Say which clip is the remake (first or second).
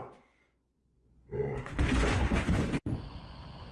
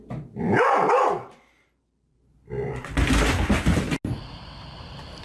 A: first